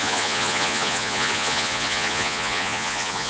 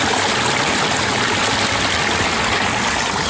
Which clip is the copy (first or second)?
first